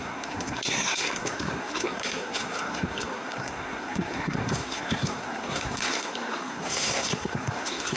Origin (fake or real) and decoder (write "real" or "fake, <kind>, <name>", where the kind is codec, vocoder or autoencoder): fake, codec, SNAC